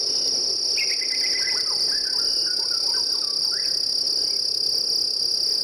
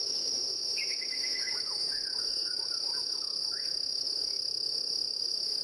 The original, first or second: first